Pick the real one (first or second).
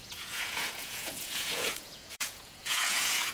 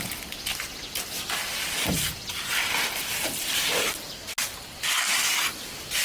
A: second